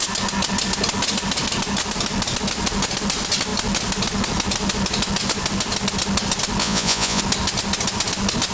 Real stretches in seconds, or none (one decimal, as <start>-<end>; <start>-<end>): 0.0-6.6; 7.2-8.5